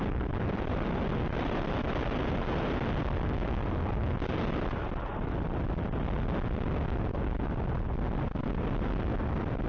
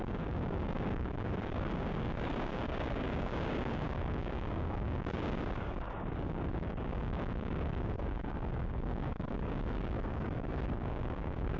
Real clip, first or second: first